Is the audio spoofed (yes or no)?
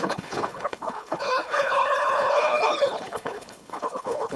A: yes